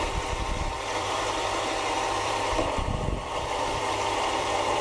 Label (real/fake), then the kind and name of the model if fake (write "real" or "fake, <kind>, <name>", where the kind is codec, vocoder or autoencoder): fake, vocoder, BigVGAN v2